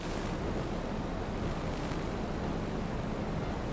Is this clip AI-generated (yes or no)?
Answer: no